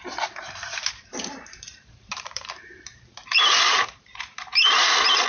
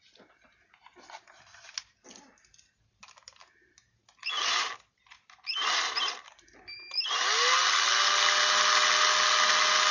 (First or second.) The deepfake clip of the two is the first